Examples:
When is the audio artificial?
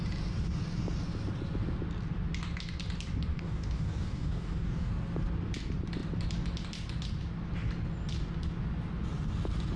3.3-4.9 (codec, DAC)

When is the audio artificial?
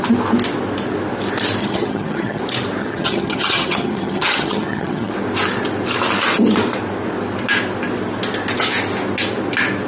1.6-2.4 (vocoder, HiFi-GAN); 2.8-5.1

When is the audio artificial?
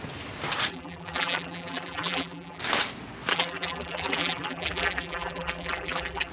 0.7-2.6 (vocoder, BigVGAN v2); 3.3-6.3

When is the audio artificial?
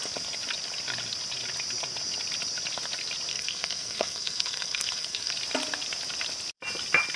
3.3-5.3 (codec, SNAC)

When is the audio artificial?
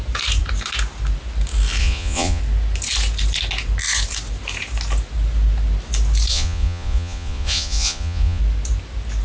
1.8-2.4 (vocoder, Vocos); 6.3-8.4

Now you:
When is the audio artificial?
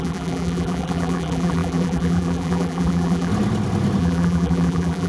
0.0-3.3 (vocoder, BigVGAN v2); 4.0-5.1